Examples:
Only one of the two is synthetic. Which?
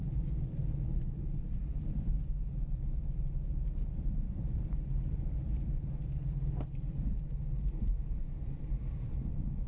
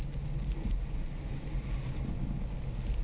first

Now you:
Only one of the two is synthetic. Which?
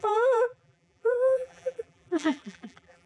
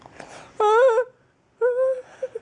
first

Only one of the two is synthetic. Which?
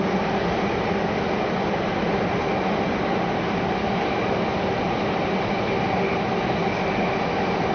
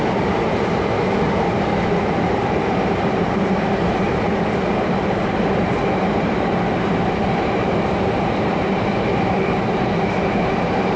second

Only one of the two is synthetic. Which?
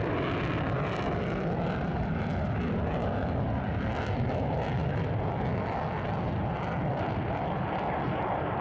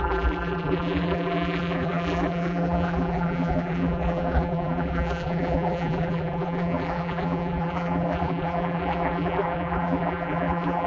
second